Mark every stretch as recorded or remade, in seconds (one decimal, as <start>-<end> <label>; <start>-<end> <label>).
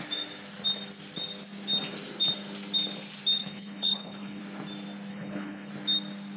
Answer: 0.0-3.4 recorded; 3.4-4.4 remade; 4.4-5.1 recorded; 5.1-5.7 remade; 5.7-6.4 recorded